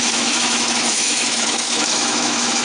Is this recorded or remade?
remade